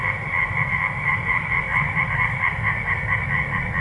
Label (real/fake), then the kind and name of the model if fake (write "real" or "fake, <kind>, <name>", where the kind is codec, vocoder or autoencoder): real